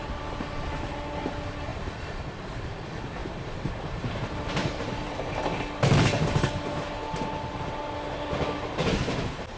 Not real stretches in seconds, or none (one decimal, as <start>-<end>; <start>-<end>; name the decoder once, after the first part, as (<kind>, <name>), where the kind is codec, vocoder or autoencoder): 3.2-4.1 (vocoder, BigVGAN v2); 4.6-5.3

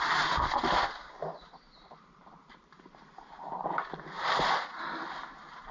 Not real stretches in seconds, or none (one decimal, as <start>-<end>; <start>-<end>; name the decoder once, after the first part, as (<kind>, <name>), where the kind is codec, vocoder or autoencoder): 1.2-4.6 (vocoder, BigVGAN v2)

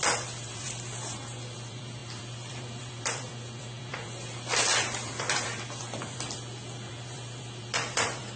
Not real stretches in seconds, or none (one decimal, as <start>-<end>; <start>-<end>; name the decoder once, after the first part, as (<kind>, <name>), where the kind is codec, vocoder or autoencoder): 0.0-8.4 (vocoder, BigVGAN v2)

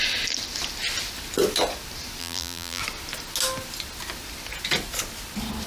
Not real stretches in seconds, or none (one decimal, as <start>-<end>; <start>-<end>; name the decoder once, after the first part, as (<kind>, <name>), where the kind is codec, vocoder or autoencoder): 2.2-2.8 (vocoder, BigVGAN v2)

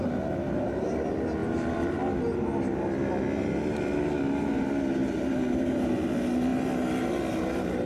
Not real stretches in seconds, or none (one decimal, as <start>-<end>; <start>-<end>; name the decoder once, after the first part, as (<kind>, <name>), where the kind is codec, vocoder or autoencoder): 1.4-2.0 (vocoder, BigVGAN v2); 5.0-5.9

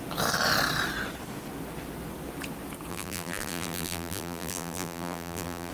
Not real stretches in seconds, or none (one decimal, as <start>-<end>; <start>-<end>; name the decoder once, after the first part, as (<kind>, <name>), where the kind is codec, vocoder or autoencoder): 2.9-5.7 (vocoder, BigVGAN v2)

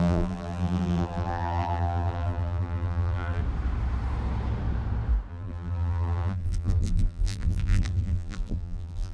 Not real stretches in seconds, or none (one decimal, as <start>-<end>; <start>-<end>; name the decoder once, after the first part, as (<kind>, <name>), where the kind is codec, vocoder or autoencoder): 0.0-3.4 (vocoder, BigVGAN v2); 5.3-9.1